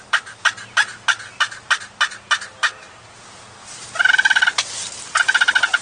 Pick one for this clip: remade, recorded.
recorded